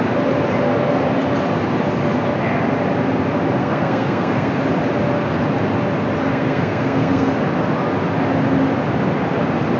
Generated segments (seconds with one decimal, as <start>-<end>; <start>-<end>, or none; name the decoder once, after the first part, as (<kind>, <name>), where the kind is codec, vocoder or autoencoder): 3.6-4.5 (codec, SNAC); 6.3-7.3